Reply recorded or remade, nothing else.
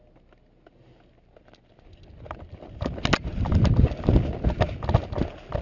recorded